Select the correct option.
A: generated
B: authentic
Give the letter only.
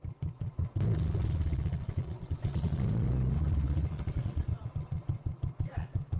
A